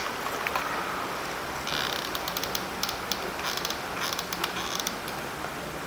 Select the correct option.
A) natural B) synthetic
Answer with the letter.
A